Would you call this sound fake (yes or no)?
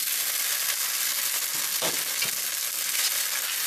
no